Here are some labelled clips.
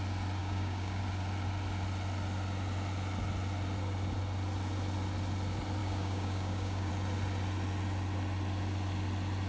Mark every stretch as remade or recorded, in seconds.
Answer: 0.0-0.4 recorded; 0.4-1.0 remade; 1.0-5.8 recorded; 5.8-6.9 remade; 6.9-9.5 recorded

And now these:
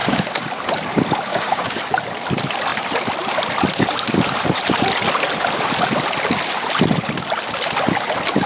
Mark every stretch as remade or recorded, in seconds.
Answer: 0.0-0.5 remade; 0.5-1.3 recorded; 1.3-1.8 remade; 1.8-8.5 recorded

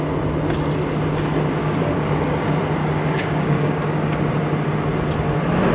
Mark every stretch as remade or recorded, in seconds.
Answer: 0.0-1.6 recorded; 1.6-2.4 remade; 2.4-2.8 recorded; 2.8-4.3 remade; 4.3-5.7 recorded

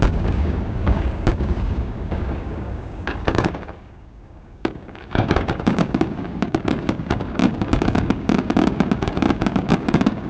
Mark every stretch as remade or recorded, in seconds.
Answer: 0.0-10.3 remade

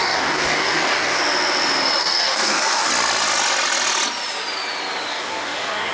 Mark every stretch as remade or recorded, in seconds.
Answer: 0.0-1.2 remade; 1.2-2.0 recorded; 2.0-2.9 remade; 2.9-5.1 recorded; 5.1-5.9 remade